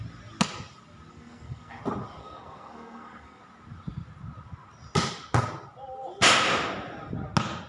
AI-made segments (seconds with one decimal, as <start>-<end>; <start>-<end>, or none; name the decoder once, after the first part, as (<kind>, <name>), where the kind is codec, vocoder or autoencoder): 1.1-1.8 (codec, SNAC); 2.2-3.4